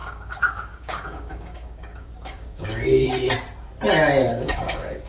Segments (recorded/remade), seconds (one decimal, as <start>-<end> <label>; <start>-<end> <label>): 0.0-3.1 remade; 3.1-4.3 recorded; 4.3-5.1 remade